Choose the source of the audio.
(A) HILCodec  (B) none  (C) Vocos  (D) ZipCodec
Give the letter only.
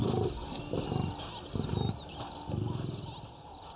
B